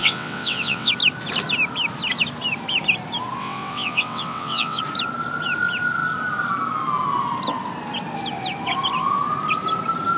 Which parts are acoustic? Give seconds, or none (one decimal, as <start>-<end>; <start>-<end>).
0.9-3.4; 4.8-10.2